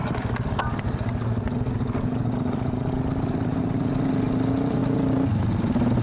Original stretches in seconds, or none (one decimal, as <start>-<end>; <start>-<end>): 0.0-6.0